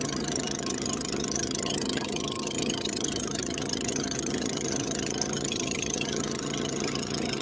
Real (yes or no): no